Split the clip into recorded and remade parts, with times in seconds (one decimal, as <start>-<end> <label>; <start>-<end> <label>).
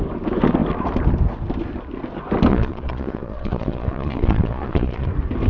0.0-2.5 recorded; 2.5-5.1 remade; 5.1-5.5 recorded